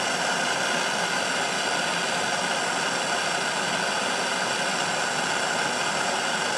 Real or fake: real